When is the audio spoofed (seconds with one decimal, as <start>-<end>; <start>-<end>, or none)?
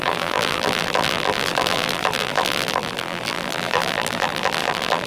0.0-5.1